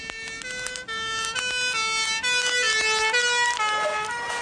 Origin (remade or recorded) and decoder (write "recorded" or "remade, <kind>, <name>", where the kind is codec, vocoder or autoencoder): recorded